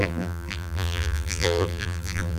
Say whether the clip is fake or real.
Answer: fake